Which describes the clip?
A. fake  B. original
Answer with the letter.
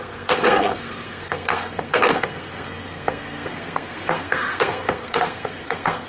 A